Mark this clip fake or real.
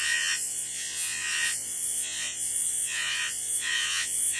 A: fake